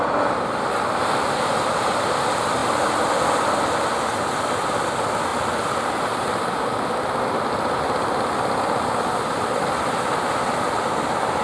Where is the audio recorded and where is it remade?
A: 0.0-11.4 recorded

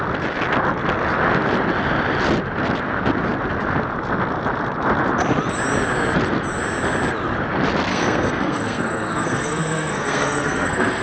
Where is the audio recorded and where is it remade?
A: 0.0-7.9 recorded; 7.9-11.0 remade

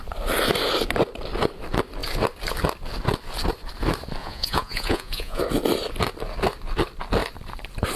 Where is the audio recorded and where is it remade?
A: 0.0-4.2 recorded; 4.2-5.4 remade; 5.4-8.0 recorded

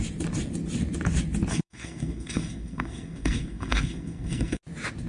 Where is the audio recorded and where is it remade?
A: 0.0-1.5 recorded; 1.5-4.6 remade; 4.6-5.1 recorded